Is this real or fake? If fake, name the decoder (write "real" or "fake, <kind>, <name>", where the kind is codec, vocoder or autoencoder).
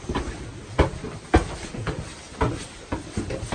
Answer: real